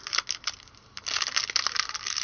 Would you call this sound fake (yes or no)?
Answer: no